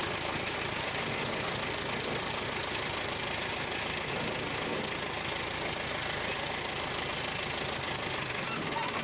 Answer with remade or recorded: recorded